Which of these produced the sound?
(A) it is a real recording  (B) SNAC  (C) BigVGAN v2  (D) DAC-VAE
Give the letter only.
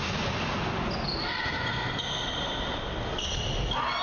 A